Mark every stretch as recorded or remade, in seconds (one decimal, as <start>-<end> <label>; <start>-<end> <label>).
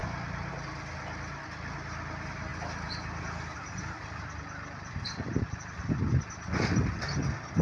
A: 0.0-7.6 recorded